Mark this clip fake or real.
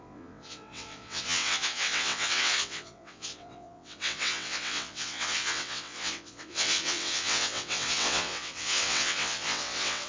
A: fake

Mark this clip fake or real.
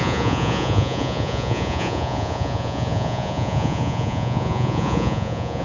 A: fake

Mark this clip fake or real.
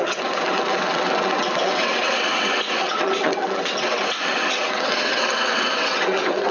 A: fake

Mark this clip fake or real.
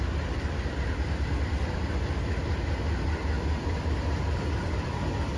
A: fake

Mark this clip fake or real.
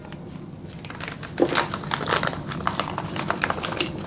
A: real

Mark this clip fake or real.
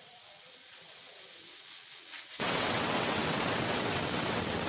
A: fake